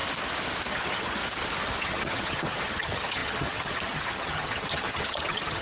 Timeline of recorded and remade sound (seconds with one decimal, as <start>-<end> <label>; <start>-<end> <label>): 0.0-0.7 recorded; 0.7-1.2 remade; 1.2-1.8 recorded; 1.8-5.6 remade